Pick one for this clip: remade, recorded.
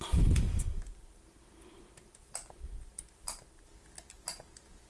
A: recorded